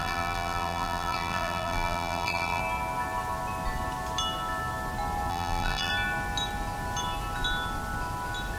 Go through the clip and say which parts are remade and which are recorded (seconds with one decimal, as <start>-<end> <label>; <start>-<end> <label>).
0.0-2.6 remade; 2.6-5.3 recorded; 5.3-5.9 remade; 5.9-8.6 recorded